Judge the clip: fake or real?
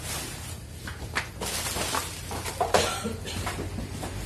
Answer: real